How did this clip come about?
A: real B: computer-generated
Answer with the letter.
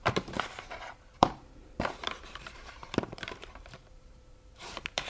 B